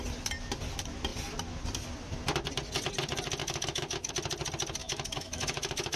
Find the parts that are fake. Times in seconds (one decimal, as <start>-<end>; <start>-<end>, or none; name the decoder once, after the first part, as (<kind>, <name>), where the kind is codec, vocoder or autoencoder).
3.4-4.1 (autoencoder, DAC-VAE); 4.8-6.0